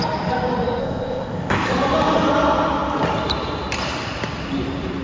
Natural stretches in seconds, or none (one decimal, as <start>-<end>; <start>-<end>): 0.0-0.8; 1.7-5.0

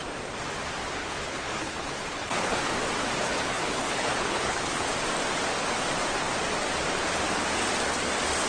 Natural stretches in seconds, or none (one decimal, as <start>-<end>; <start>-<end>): 0.0-1.0; 2.6-3.2; 4.9-8.5

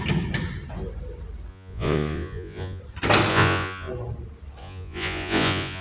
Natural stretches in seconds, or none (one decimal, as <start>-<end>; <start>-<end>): 0.0-1.5; 2.8-3.3; 3.9-4.6

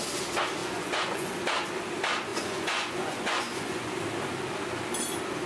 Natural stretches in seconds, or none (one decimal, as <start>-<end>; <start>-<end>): 0.0-0.6; 1.3-2.3; 3.9-5.5

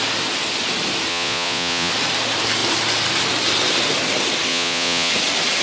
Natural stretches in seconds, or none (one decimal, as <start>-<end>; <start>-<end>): 0.0-1.1; 1.9-4.5; 5.1-5.6

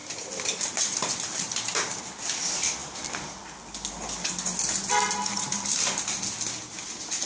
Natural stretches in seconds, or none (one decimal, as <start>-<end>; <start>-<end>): 0.0-7.3

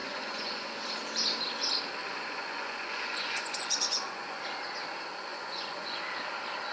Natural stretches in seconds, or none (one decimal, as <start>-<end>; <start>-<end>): 0.8-2.0; 4.4-5.3; 6.0-6.7

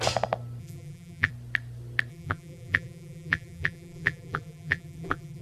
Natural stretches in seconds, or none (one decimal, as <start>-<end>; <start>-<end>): 0.0-0.6; 1.3-2.1